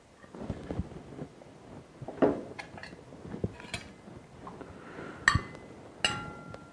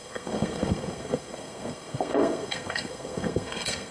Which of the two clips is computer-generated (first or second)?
second